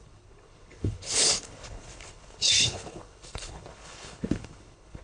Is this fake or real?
fake